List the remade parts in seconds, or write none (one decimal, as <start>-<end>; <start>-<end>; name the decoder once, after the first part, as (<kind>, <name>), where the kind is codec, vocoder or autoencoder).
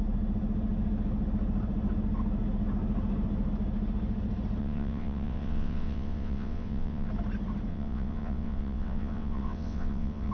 4.6-7.1 (vocoder, WaveNeXt); 7.7-10.3